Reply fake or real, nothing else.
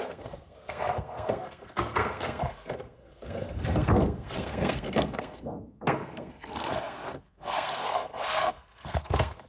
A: fake